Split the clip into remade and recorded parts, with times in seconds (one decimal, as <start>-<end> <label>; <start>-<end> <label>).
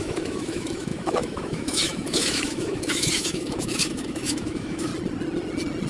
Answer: 0.0-4.9 remade; 4.9-5.9 recorded